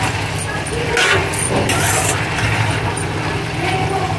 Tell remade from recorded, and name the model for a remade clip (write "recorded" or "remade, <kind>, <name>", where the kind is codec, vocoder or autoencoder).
recorded